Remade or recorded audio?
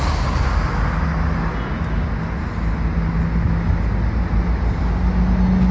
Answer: recorded